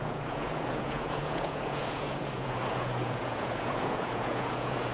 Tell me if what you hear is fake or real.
fake